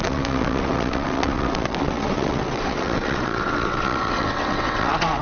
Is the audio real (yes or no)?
no